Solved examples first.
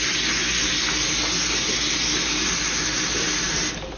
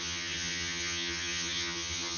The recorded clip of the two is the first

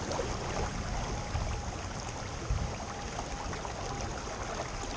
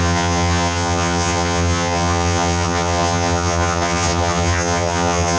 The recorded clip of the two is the first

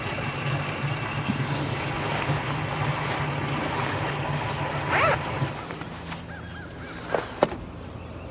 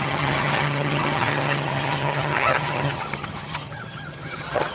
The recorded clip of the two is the first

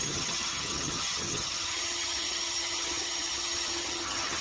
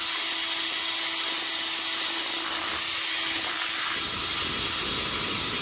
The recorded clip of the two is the second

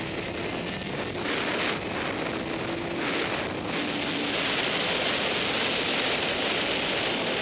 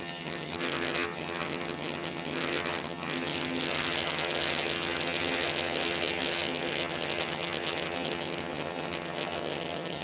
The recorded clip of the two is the first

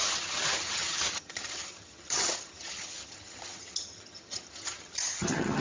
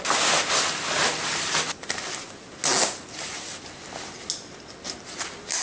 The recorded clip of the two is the second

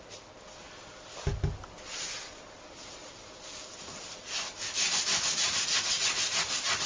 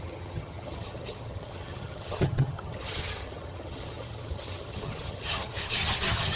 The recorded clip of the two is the first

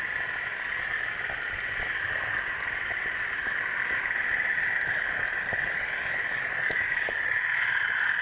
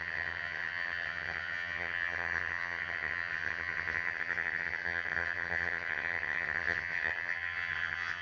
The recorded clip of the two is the first